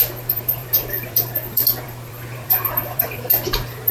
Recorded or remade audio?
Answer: remade